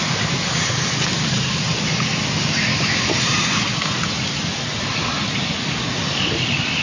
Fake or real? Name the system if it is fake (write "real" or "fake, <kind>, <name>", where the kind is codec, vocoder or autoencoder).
fake, vocoder, BigVGAN v2